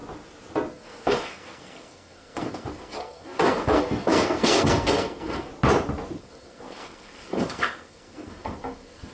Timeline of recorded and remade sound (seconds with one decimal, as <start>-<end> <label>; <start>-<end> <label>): 0.0-0.7 recorded; 0.7-5.5 remade; 5.5-6.2 recorded; 6.2-9.1 remade